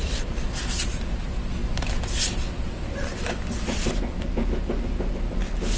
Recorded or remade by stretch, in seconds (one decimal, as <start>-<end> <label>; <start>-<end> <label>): 0.0-5.8 recorded